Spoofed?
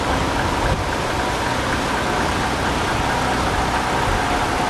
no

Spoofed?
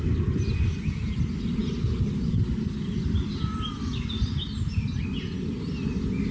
no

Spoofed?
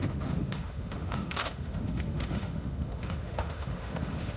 yes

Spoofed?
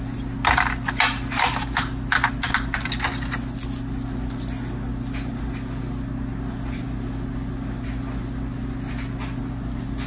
no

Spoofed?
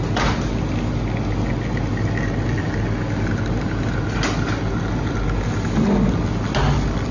no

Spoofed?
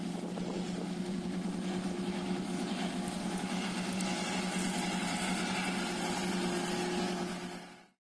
no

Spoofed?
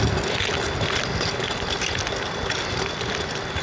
no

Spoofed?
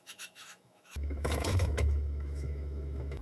yes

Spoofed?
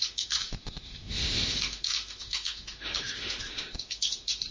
yes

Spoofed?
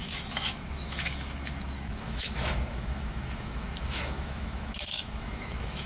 yes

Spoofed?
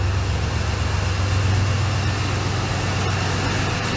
no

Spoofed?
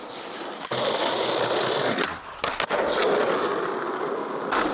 no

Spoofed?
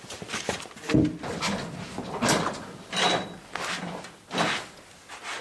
no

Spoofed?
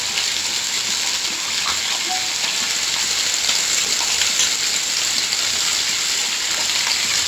no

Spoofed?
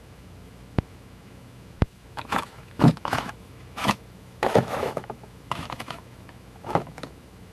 yes